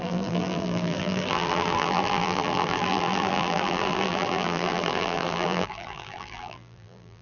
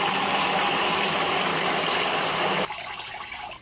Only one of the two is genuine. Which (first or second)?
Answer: second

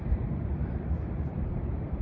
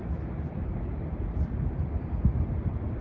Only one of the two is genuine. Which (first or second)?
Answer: second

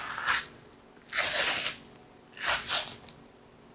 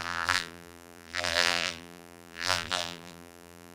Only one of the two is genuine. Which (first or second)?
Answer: first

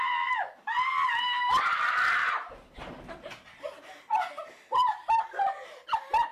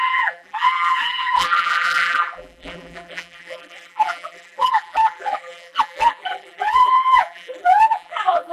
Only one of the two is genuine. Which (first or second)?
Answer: first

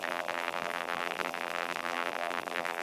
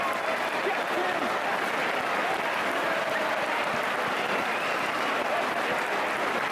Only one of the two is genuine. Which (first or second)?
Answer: second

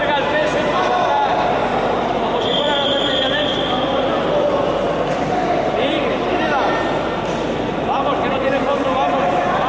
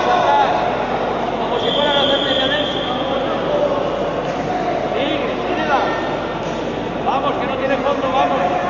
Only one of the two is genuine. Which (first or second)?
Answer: second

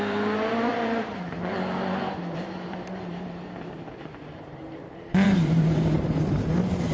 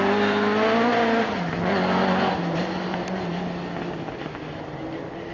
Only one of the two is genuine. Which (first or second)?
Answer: second